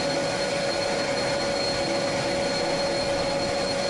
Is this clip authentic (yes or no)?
yes